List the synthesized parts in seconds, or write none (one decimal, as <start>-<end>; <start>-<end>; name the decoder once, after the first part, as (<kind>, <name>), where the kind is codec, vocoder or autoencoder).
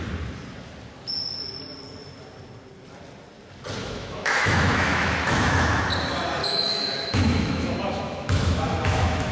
3.8-5.8 (autoencoder, DAC-VAE); 6.4-9.3